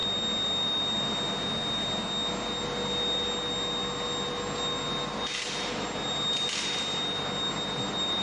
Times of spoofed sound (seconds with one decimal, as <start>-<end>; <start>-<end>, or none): none